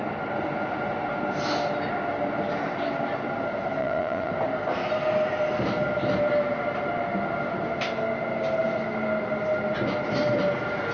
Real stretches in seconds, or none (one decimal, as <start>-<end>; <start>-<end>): 0.0-3.8; 4.3-10.9